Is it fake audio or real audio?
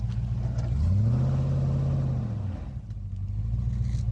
real